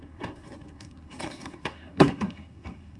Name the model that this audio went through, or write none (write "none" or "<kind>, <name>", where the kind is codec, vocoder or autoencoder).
codec, SNAC